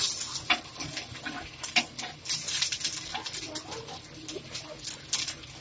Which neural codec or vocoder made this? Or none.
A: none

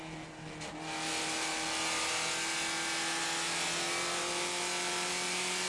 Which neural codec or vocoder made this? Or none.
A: none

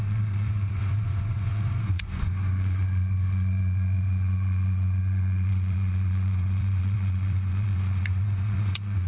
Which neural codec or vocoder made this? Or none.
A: vocoder, Vocos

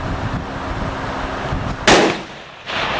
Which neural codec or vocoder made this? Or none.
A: none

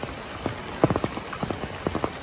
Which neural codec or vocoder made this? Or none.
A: none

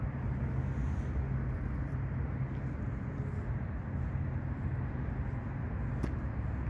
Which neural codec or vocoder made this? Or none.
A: none